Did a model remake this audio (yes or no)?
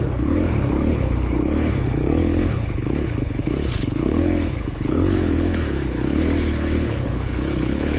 yes